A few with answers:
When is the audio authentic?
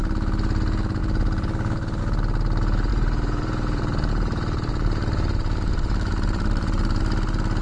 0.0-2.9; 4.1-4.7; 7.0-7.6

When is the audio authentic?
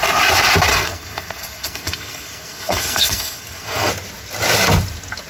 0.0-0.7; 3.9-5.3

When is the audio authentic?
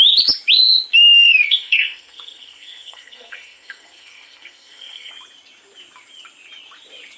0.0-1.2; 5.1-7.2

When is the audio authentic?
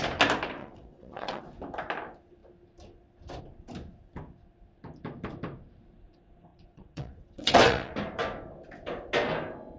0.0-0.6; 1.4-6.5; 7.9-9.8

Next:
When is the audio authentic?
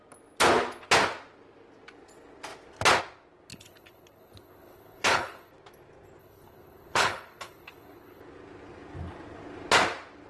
0.0-3.5; 5.5-6.2; 8.2-10.3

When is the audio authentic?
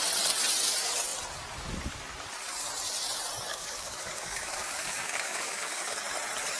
0.0-3.5; 6.0-6.6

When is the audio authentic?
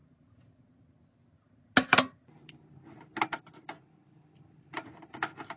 0.0-5.6